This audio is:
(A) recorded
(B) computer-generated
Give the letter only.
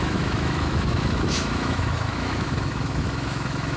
B